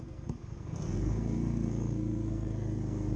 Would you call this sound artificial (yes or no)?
yes